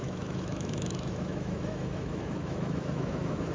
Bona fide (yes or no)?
no